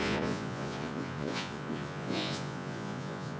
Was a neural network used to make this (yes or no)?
yes